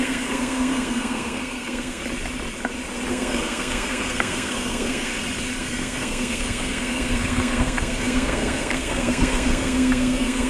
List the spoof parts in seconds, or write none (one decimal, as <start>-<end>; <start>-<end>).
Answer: 0.0-2.0; 3.1-5.1; 5.6-10.5